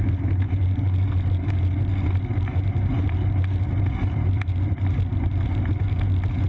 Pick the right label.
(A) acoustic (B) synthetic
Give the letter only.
A